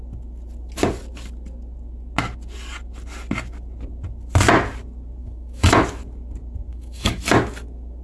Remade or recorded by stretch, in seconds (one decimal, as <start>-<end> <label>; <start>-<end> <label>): 0.0-5.2 recorded; 5.2-5.7 remade; 5.7-6.7 recorded; 6.7-7.2 remade; 7.2-8.0 recorded